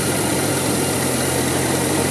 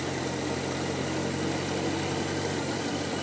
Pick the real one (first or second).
second